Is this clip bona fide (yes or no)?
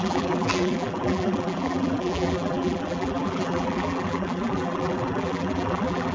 no